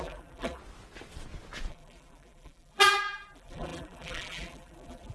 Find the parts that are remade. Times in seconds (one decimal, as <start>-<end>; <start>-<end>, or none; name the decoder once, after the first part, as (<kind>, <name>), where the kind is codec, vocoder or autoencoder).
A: 0.0-0.6 (vocoder, BigVGAN v2); 1.7-5.1